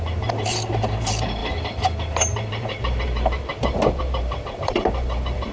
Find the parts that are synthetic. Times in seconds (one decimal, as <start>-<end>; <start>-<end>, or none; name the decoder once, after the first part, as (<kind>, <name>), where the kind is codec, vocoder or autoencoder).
0.0-5.5 (vocoder, BigVGAN v2)